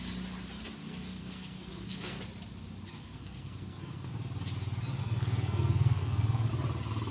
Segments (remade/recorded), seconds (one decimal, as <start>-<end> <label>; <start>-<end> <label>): 0.0-0.8 recorded; 0.8-2.2 remade; 2.2-2.9 recorded; 2.9-4.1 remade; 4.1-5.0 recorded; 5.0-6.5 remade; 6.5-7.1 recorded